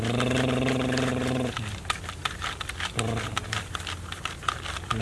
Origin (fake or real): real